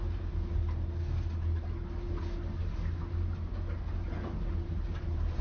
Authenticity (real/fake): real